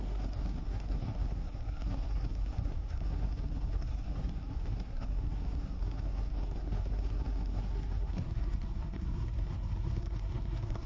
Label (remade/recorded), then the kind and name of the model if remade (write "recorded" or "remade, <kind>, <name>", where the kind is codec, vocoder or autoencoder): remade, codec, SNAC